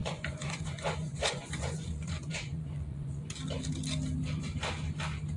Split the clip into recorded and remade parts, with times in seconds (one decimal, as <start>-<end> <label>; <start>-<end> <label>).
0.0-3.2 remade; 3.2-5.4 recorded